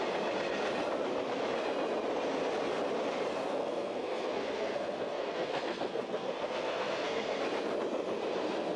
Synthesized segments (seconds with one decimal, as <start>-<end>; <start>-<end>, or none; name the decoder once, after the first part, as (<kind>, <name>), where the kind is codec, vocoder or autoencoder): 3.3-7.4 (codec, SNAC)